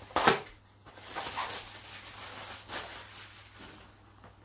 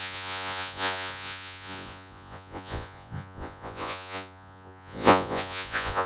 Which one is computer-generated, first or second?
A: second